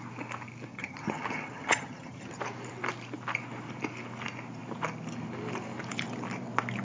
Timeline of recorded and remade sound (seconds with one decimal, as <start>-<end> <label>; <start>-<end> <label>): 0.0-0.7 recorded; 0.7-2.4 remade; 2.4-6.8 recorded